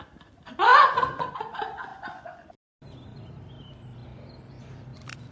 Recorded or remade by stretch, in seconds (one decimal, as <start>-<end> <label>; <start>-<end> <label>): 0.0-0.7 recorded; 0.7-1.3 remade; 1.3-1.9 recorded; 1.9-2.5 remade; 2.5-5.3 recorded